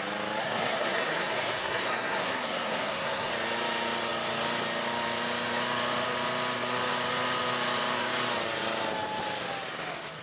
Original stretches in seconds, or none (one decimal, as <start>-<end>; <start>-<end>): 0.0-0.4; 3.3-10.2